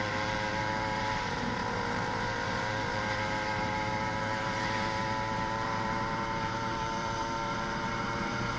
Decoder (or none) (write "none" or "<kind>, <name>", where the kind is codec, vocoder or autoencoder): vocoder, BigVGAN v2